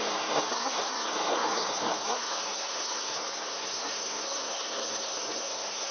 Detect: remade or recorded remade